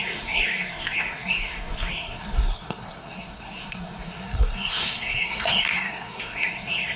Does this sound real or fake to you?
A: fake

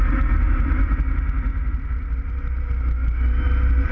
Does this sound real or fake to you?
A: real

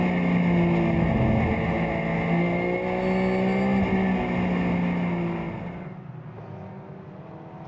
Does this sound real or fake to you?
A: real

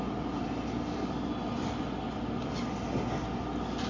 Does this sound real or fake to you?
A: real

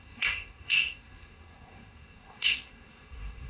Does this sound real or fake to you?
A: fake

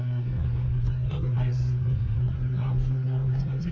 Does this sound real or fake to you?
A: fake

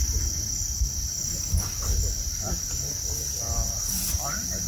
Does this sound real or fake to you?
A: real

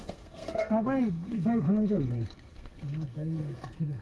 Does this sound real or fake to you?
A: fake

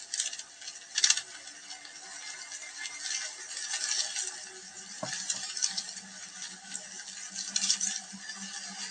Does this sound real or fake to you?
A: real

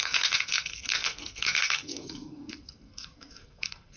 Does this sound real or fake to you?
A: fake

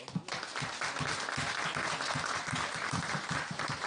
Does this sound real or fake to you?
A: real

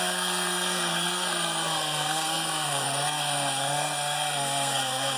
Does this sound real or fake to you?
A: fake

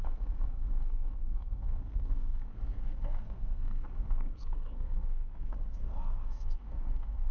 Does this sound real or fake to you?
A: fake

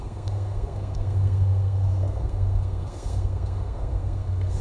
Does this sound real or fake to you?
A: fake